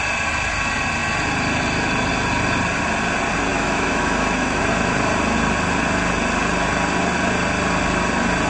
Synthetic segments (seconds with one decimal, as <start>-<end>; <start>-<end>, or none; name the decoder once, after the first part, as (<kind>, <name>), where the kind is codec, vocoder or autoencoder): 3.5-4.6 (autoencoder, DAC-VAE)